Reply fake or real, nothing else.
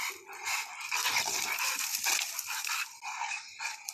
fake